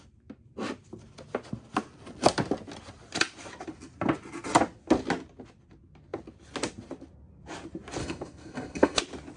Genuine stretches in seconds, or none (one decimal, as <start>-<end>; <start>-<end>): 0.0-8.0; 9.0-9.4